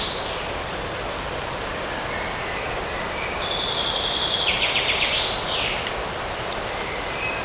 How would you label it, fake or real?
real